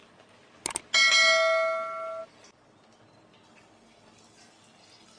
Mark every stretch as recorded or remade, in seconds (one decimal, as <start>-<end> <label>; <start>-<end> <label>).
0.0-5.2 recorded